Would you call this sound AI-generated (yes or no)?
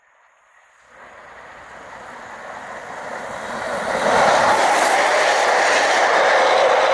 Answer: no